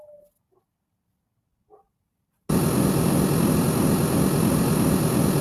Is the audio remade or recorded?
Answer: recorded